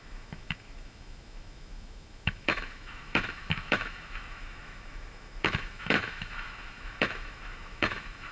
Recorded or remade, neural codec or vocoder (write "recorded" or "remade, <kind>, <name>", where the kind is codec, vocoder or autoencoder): remade, autoencoder, DAC-VAE